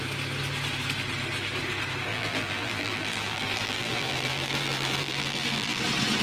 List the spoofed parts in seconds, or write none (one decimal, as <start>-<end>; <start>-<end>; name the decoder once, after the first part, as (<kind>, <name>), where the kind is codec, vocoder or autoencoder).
2.1-5.8 (vocoder, BigVGAN v2)